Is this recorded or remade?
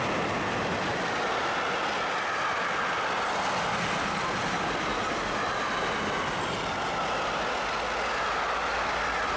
recorded